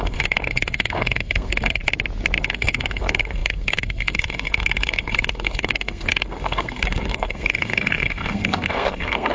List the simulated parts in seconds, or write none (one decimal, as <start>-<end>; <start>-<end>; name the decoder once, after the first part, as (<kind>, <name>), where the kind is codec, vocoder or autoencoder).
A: 0.0-1.8 (codec, SNAC); 2.4-9.3